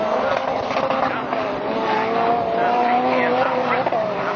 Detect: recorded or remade recorded